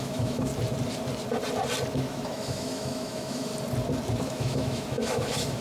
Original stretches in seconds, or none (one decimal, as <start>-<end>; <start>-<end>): 0.5-1.9; 3.5-4.2